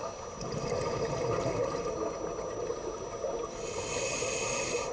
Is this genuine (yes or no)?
yes